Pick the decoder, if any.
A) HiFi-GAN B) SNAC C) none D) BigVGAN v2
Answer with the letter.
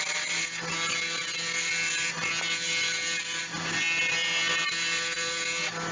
C